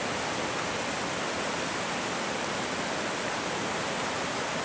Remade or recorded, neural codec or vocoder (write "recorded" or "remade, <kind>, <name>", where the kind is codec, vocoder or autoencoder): recorded